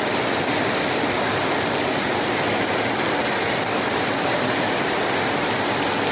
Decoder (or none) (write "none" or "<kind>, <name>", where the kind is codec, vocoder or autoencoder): none